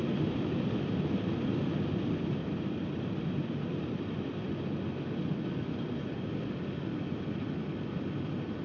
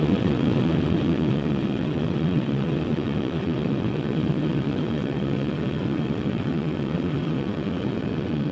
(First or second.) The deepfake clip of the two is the second